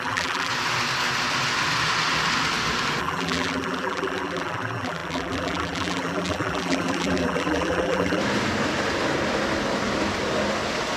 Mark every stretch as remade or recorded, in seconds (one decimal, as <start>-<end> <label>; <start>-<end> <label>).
0.0-0.5 remade; 0.5-3.0 recorded; 3.0-8.2 remade; 8.2-11.0 recorded